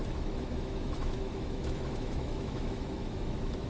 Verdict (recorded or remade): remade